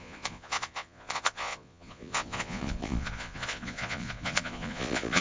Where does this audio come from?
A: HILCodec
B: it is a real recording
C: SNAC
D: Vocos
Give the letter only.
D